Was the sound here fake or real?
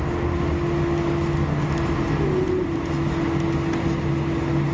real